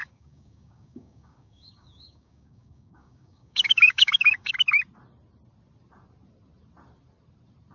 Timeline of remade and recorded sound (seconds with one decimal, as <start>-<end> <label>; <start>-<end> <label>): 0.0-4.5 remade; 4.5-7.7 recorded